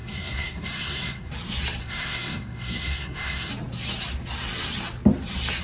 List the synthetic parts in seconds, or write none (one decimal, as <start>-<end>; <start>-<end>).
0.0-1.3; 1.8-3.5